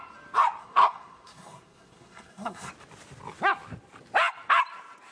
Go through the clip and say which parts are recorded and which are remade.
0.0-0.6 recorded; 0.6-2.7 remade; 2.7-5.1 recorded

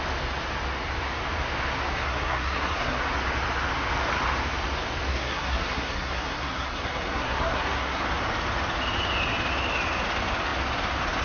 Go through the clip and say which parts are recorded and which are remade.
0.0-1.9 recorded; 1.9-3.0 remade; 3.0-5.1 recorded; 5.1-8.0 remade; 8.0-11.2 recorded